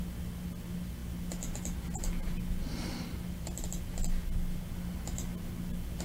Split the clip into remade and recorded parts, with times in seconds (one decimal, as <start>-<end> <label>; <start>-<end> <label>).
0.0-6.0 recorded